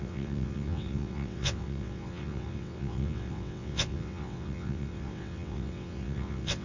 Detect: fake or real fake